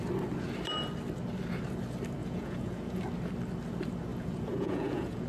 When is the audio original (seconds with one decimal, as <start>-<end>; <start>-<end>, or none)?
0.0-2.2; 3.0-4.1